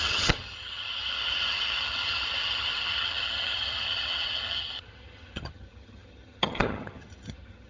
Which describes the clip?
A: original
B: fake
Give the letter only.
B